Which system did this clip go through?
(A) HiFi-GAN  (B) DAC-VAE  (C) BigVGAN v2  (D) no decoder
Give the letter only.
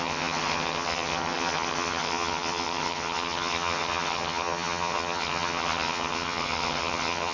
A